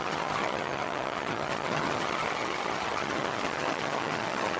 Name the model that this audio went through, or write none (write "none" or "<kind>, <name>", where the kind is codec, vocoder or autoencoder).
vocoder, HiFi-GAN